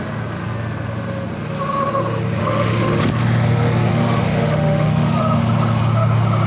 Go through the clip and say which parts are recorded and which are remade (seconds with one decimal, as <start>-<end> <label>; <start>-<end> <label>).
0.0-2.4 recorded; 2.4-3.0 remade; 3.0-3.9 recorded; 3.9-5.2 remade; 5.2-6.5 recorded